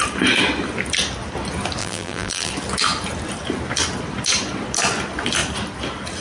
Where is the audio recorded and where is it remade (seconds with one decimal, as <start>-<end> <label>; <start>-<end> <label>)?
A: 0.0-1.8 recorded; 1.8-2.5 remade; 2.5-6.2 recorded